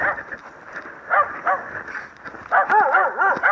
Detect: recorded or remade recorded